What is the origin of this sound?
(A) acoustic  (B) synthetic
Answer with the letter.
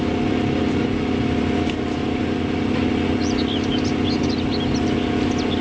A